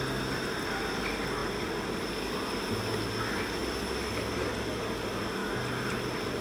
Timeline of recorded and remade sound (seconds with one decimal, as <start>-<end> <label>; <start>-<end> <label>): 0.0-6.4 recorded